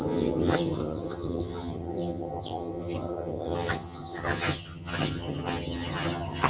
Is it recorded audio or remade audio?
remade